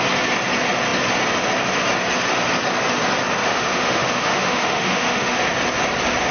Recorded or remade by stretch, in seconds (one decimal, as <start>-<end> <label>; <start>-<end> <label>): 0.0-3.4 recorded; 3.4-5.4 remade; 5.4-6.3 recorded